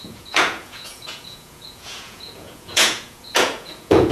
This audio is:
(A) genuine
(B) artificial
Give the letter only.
B